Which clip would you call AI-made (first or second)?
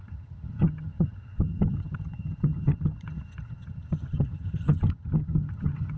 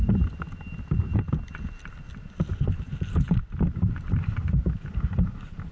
first